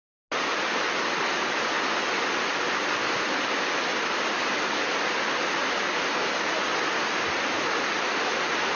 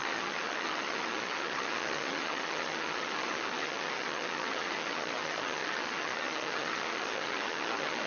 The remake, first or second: second